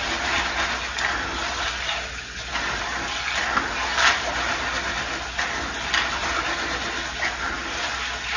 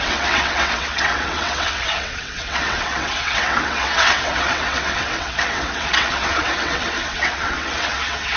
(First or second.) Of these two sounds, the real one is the first